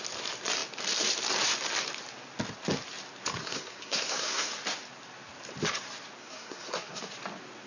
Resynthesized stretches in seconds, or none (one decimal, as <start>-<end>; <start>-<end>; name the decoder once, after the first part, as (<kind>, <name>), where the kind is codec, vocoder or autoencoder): 3.4-4.5 (codec, SNAC); 6.2-7.0